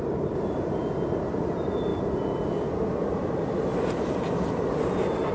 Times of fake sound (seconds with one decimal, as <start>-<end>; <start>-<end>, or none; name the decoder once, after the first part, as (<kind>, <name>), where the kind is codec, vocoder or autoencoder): 0.0-1.9 (vocoder, BigVGAN v2)